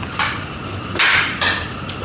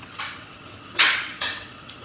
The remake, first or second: second